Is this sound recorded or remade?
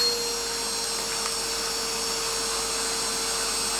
recorded